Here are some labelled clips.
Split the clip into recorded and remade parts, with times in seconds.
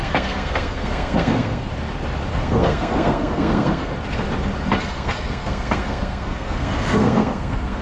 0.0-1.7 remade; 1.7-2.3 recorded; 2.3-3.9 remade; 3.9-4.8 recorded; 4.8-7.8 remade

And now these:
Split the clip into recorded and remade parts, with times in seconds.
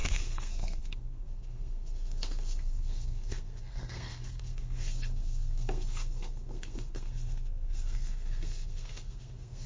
0.0-9.7 remade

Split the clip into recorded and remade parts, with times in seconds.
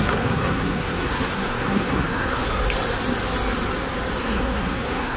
0.0-2.6 remade; 2.6-4.2 recorded; 4.2-5.2 remade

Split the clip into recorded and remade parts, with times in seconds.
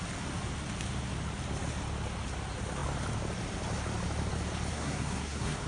0.0-4.7 recorded; 4.7-5.7 remade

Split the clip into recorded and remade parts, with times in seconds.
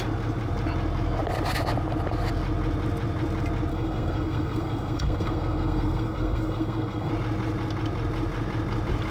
0.0-3.7 recorded; 3.7-7.1 remade; 7.1-9.1 recorded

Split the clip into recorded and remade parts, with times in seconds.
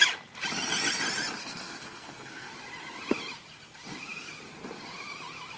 0.0-1.4 recorded; 1.4-2.5 remade; 2.5-5.6 recorded